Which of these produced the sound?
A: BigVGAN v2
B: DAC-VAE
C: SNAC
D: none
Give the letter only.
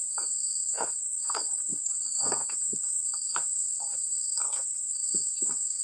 C